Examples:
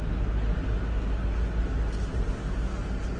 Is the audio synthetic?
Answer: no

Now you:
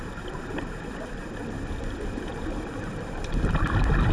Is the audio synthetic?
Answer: no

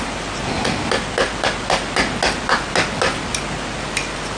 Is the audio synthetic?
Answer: no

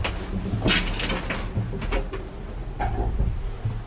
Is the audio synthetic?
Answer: no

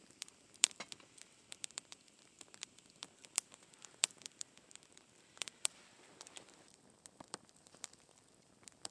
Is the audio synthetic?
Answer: yes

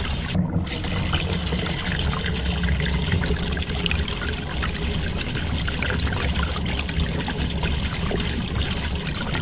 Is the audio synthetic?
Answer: no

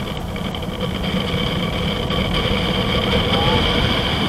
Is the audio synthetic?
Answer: no